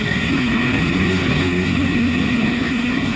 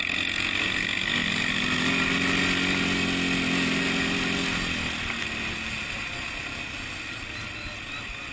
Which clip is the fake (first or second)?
first